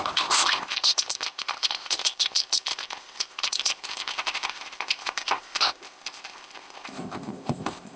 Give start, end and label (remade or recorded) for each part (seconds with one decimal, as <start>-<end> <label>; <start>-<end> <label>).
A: 0.0-8.0 remade